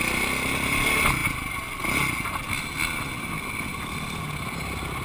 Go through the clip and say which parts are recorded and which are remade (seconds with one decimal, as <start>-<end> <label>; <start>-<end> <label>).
0.0-5.0 recorded